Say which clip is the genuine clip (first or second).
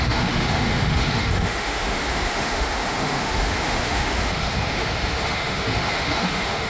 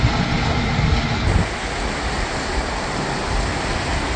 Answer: second